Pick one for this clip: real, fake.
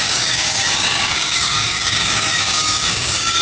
fake